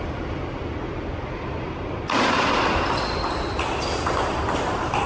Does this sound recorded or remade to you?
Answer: recorded